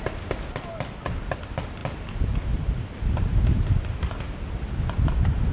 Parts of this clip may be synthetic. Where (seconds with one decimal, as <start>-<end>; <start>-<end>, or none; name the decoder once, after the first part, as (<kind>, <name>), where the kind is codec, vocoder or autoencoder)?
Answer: none